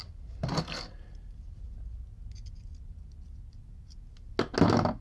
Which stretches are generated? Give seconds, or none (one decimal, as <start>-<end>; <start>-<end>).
none